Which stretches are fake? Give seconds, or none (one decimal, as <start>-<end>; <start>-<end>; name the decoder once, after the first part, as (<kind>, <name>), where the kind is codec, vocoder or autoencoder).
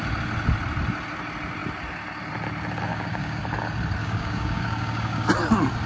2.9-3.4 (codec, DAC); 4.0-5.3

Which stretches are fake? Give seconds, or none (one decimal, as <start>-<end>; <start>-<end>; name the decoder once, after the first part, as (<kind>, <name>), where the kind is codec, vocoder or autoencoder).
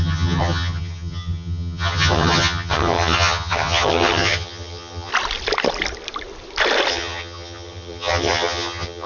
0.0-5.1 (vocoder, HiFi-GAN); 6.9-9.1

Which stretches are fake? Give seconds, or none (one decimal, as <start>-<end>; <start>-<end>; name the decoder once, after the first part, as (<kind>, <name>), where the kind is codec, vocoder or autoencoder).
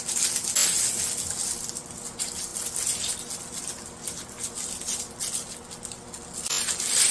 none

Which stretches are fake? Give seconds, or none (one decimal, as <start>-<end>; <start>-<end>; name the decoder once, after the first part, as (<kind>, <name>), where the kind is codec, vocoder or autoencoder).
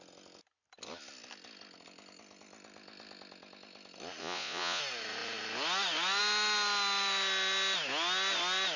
4.2-4.8 (vocoder, Vocos)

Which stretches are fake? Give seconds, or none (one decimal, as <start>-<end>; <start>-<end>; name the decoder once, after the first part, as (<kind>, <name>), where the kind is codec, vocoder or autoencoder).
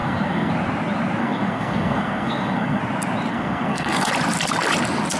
0.0-0.5 (codec, SNAC); 1.2-2.8; 3.3-4.1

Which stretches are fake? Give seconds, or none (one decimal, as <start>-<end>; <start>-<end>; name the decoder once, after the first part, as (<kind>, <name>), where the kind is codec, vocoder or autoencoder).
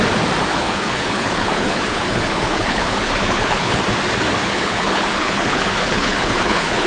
0.5-3.8 (codec, HILCodec); 4.4-6.9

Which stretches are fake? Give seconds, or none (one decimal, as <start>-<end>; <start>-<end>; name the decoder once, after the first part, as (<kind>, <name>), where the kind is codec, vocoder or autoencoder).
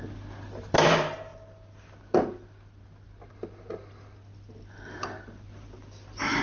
none